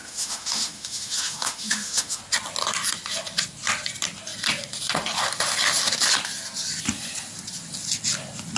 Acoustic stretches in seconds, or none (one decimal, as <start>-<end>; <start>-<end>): 2.2-8.6